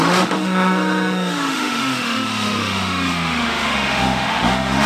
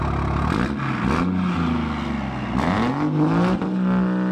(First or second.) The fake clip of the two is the first